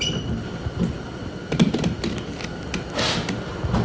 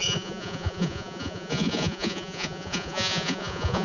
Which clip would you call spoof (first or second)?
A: second